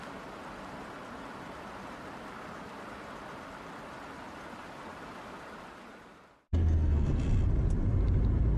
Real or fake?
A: real